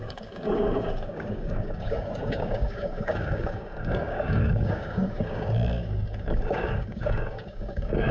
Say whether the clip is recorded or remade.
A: remade